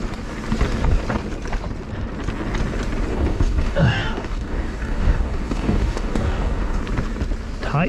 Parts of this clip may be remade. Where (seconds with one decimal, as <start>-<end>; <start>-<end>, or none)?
3.1-6.8